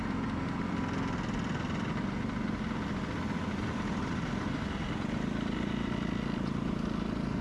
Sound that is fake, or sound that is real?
real